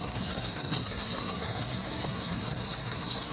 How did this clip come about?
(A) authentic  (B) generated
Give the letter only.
B